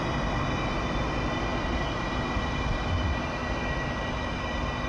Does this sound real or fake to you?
real